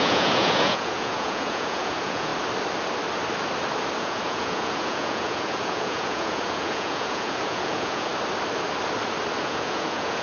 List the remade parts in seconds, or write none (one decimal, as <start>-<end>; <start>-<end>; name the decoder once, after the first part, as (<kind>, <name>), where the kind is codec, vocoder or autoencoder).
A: 0.0-2.3 (vocoder, Vocos); 4.0-8.1; 9.4-10.2